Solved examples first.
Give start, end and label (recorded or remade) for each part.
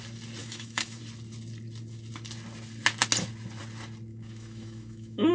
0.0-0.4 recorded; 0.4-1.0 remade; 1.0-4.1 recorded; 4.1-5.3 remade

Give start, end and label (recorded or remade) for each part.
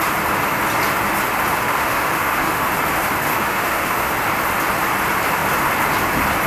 0.0-1.6 recorded; 1.6-2.7 remade; 2.7-3.3 recorded; 3.3-4.1 remade; 4.1-6.5 recorded